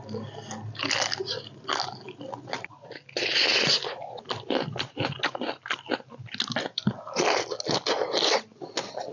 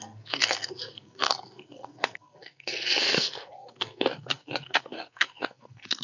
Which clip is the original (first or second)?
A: first